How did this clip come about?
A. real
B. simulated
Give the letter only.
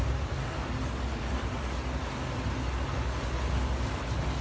A